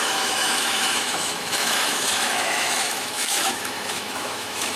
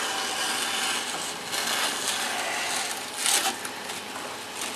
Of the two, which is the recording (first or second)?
second